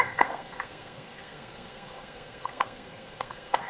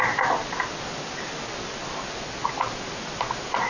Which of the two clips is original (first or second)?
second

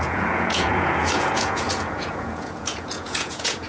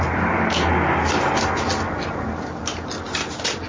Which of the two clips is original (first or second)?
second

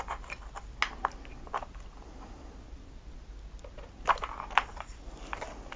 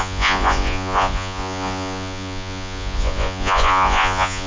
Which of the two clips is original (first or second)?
first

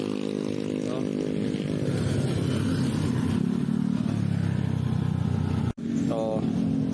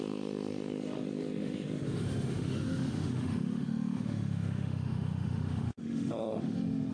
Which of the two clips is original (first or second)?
first